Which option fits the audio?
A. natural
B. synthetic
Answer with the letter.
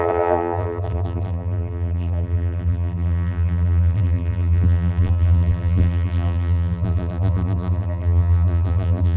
B